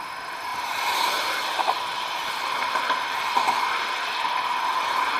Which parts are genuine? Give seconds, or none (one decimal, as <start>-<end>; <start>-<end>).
0.0-0.5; 3.6-5.2